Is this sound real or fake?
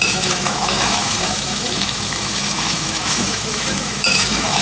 fake